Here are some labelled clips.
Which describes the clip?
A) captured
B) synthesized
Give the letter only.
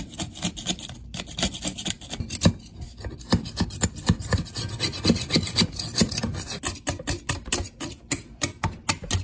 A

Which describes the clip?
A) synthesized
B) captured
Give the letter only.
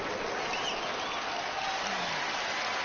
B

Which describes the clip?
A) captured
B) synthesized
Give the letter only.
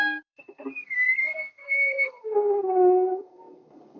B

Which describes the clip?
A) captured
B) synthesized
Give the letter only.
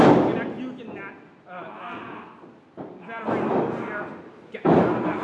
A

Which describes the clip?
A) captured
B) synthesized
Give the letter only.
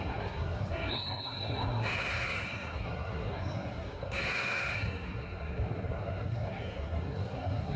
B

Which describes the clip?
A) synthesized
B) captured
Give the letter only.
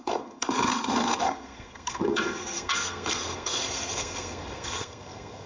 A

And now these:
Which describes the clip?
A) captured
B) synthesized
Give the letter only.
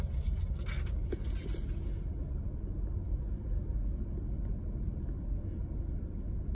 A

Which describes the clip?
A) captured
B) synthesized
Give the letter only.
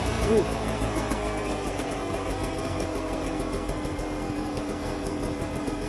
B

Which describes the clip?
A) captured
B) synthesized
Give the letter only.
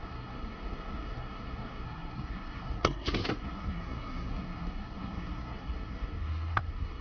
B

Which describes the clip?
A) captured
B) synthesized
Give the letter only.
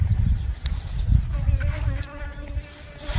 A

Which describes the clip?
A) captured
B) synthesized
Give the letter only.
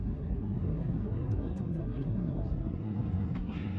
B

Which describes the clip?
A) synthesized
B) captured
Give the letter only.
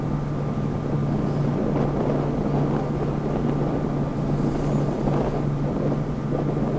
B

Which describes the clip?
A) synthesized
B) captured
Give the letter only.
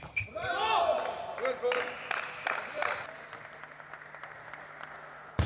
B